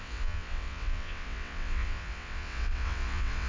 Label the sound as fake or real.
fake